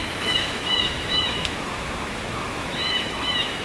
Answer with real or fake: fake